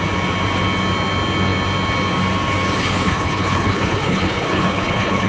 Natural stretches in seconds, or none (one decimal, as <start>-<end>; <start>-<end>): 0.0-2.8